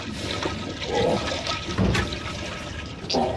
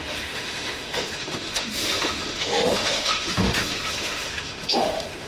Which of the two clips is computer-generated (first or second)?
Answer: second